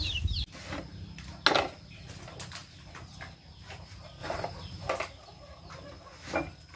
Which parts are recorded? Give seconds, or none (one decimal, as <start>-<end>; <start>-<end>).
0.0-4.2; 4.9-6.8